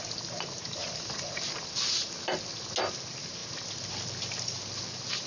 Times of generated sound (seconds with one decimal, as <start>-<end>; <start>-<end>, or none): none